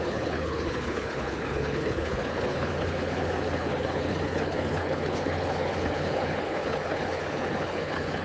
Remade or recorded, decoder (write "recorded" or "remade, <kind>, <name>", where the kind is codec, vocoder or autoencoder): remade, codec, HILCodec